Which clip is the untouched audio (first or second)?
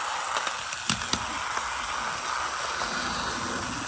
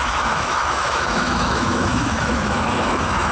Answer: first